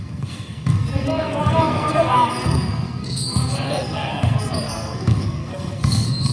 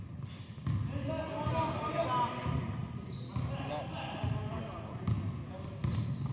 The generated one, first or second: first